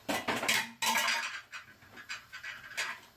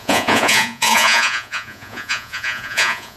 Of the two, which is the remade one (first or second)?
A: second